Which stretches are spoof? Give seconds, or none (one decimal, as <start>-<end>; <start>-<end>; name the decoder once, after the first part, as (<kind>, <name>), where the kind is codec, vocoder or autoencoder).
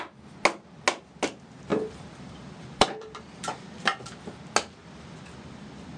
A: 1.7-4.0 (vocoder, BigVGAN v2); 4.8-6.0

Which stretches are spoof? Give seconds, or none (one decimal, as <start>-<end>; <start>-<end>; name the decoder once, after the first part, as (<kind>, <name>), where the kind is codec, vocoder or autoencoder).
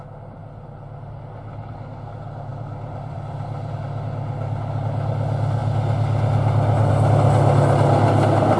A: 2.5-3.8 (vocoder, BigVGAN v2)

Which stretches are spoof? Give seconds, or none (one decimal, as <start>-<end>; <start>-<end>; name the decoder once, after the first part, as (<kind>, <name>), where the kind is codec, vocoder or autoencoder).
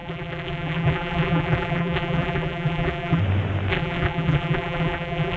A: 0.0-3.2 (vocoder, BigVGAN v2); 3.7-5.4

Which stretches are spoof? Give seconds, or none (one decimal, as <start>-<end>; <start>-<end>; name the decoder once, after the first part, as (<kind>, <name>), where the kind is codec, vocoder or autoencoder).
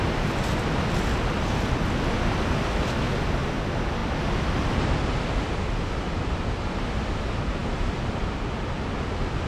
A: none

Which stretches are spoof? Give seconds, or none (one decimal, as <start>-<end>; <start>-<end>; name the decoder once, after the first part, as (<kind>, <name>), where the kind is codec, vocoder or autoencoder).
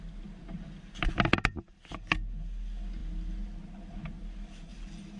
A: 0.4-1.1 (vocoder, BigVGAN v2)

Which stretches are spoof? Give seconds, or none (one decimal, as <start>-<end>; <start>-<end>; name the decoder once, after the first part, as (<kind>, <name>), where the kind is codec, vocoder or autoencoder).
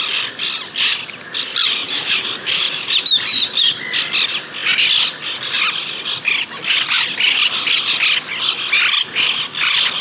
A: 1.8-3.2 (vocoder, BigVGAN v2)